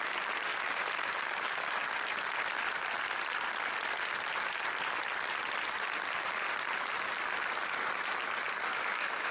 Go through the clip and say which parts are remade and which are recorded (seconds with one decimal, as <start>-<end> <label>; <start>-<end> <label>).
0.0-8.7 recorded; 8.7-9.3 remade